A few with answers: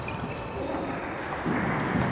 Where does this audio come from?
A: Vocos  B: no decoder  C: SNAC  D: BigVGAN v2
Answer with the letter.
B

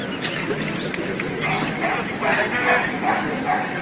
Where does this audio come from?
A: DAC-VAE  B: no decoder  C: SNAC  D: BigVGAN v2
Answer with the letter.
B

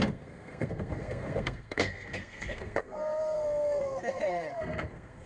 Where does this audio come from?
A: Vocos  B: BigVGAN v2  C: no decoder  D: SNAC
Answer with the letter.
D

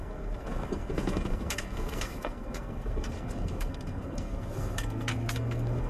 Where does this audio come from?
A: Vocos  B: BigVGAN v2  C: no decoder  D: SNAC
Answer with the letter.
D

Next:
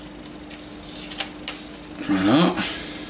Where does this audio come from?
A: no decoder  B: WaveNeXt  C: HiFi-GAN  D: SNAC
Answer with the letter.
A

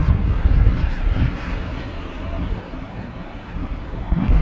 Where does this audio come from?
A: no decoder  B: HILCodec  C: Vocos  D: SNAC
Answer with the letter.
D